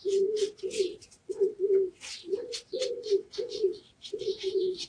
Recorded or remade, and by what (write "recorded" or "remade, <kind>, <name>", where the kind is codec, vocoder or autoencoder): remade, vocoder, WaveNeXt